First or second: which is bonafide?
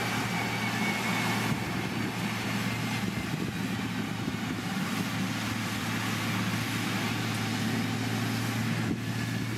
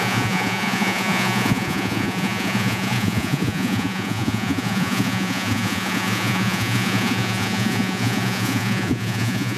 first